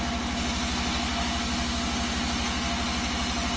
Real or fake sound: real